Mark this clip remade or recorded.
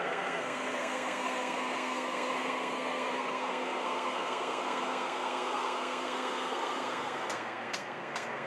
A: remade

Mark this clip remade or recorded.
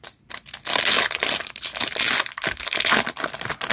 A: recorded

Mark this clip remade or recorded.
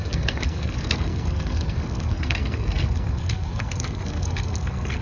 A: remade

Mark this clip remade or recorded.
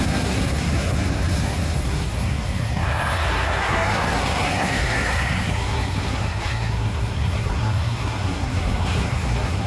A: remade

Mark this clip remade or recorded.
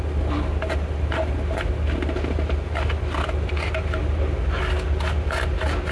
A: recorded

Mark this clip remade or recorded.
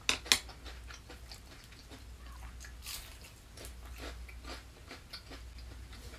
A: recorded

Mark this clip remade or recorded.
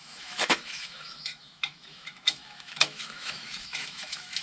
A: remade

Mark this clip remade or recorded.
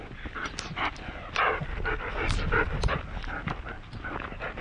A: recorded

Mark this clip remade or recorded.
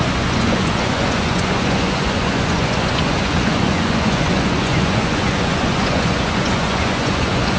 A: remade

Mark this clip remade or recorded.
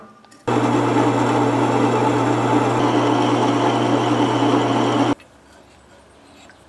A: recorded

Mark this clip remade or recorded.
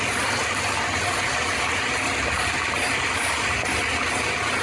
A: recorded